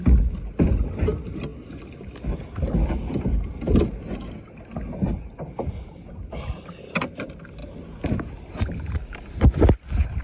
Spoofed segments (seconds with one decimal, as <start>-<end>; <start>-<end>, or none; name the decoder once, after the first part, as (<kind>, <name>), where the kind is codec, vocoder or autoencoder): none